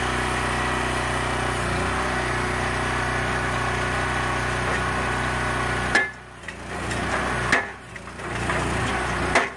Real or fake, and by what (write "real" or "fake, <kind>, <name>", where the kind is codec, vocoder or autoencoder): real